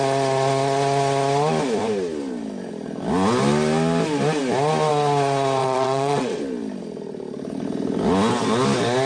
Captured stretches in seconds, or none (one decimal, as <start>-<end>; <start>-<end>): 0.0-5.6; 6.4-9.1